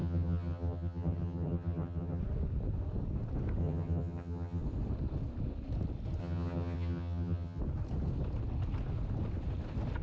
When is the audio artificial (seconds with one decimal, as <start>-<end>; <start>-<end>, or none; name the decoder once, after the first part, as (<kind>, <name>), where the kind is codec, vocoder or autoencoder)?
0.0-2.2 (vocoder, HiFi-GAN); 3.6-4.6; 6.2-7.6